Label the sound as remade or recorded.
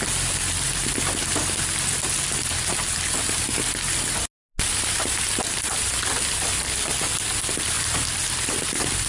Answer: recorded